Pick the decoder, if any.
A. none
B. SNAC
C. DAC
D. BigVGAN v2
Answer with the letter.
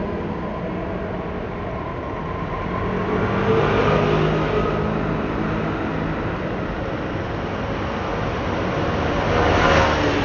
A